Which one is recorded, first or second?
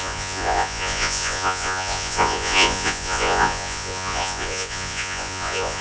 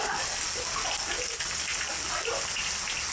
second